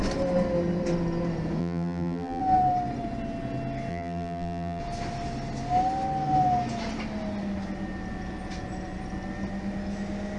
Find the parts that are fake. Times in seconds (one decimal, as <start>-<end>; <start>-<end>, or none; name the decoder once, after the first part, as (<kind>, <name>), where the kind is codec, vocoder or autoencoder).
1.6-2.4 (vocoder, BigVGAN v2); 3.9-4.8